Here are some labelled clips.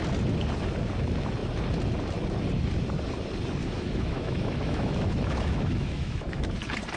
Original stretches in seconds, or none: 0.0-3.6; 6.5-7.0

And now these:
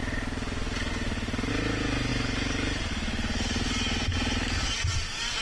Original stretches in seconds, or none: 0.0-5.4

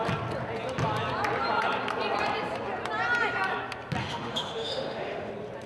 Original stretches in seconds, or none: 0.0-4.0; 5.3-5.7

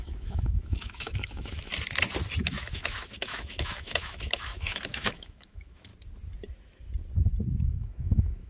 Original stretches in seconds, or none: 1.7-2.4; 5.9-7.6

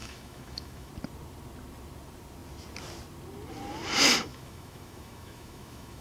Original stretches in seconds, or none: 0.9-4.3

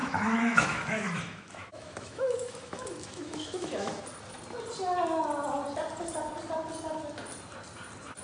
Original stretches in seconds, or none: 4.0-8.2

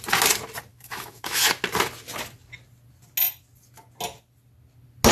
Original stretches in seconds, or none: 0.0-0.7; 1.4-5.1

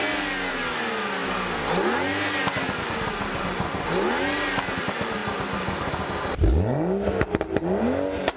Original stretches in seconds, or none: 0.0-8.4